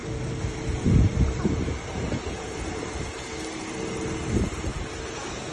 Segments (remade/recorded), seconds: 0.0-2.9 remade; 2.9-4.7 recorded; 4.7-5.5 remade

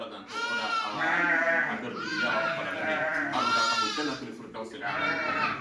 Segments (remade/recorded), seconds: 0.0-2.1 recorded; 2.1-3.1 remade; 3.1-5.6 recorded